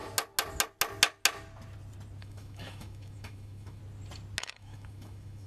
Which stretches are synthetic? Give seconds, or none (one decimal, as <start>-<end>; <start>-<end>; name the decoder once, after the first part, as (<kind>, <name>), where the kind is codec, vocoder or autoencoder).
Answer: 2.2-3.8 (autoencoder, DAC-VAE); 4.4-5.5